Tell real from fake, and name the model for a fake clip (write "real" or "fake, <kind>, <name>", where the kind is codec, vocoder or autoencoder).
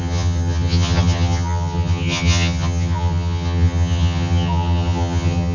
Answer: fake, vocoder, HiFi-GAN